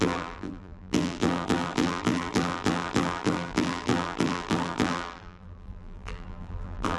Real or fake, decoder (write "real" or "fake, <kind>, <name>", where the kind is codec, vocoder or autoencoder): fake, vocoder, BigVGAN v2